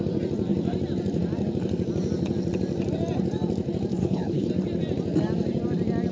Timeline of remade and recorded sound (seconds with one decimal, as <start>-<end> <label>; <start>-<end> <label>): 0.0-4.0 recorded; 4.0-4.5 remade; 4.5-6.1 recorded